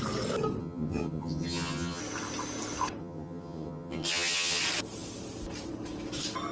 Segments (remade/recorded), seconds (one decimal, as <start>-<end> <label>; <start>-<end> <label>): 0.0-0.6 recorded; 0.6-2.0 remade; 2.0-3.0 recorded; 3.0-4.6 remade; 4.6-6.5 recorded